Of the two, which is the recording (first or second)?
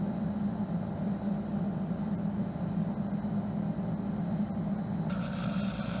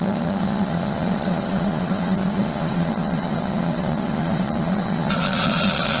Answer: first